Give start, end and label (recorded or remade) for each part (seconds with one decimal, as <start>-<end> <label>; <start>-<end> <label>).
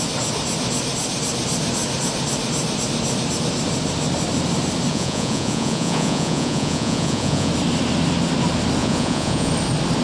0.0-4.9 recorded; 4.9-7.5 remade; 7.5-8.8 recorded; 8.8-9.5 remade; 9.5-10.0 recorded